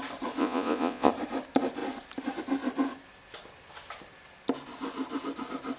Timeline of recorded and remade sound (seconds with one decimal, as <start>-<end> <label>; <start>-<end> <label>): 0.0-0.4 recorded; 0.4-1.1 remade; 1.1-5.8 recorded